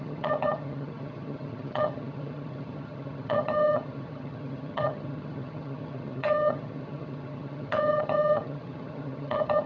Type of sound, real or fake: fake